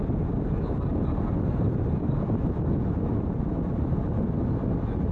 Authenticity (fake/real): real